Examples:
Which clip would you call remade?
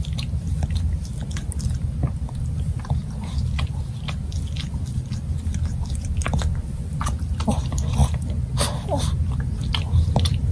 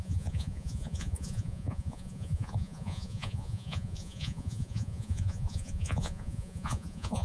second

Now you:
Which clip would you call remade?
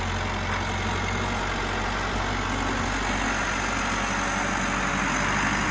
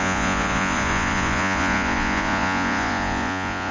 second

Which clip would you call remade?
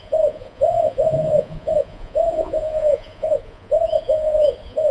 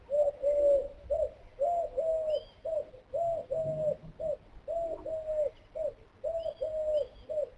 first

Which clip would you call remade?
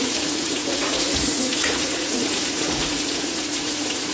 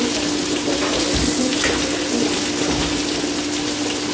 first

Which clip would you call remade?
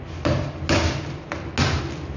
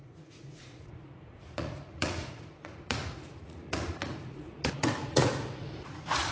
second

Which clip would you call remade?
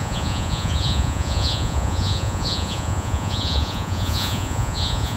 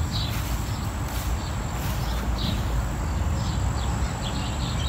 first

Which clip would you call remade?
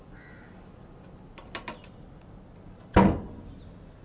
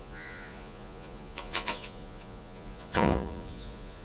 second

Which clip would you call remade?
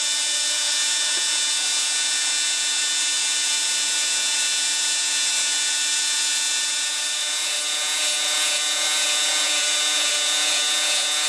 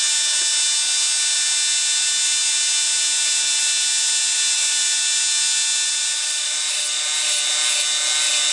first